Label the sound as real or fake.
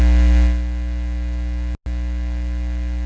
real